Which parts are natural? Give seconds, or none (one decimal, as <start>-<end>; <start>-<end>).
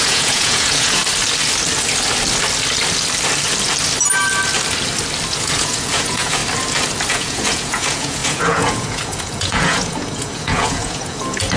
1.0-5.3; 6.4-7.1